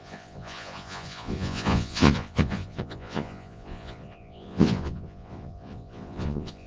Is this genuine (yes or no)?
no